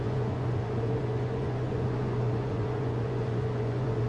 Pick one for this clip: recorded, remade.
remade